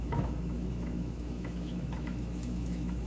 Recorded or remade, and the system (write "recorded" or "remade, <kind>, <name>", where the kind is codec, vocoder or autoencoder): remade, autoencoder, DAC-VAE